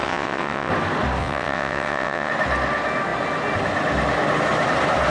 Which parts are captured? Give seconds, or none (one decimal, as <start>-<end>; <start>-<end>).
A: 0.7-1.2; 2.3-5.1

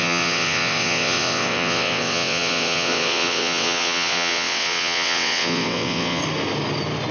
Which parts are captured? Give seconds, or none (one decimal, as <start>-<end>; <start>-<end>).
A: 6.2-7.1

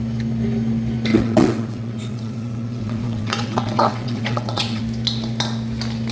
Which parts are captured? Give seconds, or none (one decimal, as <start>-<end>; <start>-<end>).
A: 0.0-1.1; 4.8-6.1

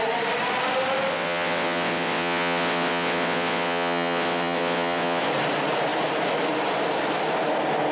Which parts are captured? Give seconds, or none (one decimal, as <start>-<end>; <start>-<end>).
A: 0.0-1.1; 5.2-7.9

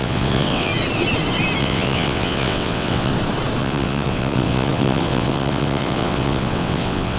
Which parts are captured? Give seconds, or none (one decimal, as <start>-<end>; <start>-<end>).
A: 0.7-1.6; 3.1-3.6

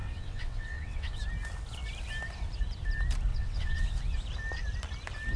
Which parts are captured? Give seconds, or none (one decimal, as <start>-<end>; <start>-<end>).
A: 1.2-3.3; 4.0-5.4

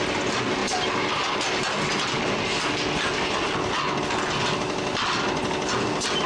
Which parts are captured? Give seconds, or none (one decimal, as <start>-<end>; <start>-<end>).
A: 0.0-6.3